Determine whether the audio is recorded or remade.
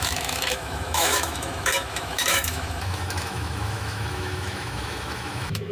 remade